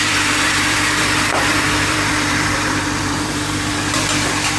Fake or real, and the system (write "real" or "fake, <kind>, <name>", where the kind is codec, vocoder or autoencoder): fake, vocoder, BigVGAN v2